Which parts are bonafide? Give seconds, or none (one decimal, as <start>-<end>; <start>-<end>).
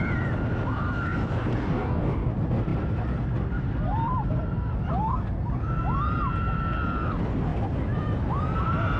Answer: 0.0-1.5; 2.3-9.0